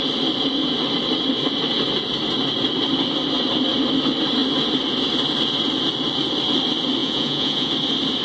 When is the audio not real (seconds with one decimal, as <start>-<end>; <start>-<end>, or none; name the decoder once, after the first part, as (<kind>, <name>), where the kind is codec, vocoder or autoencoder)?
7.0-7.7 (vocoder, Vocos)